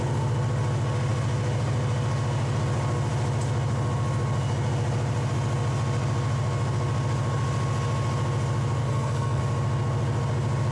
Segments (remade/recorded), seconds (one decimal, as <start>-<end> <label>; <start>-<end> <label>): 0.0-8.8 recorded; 8.8-9.4 remade; 9.4-10.7 recorded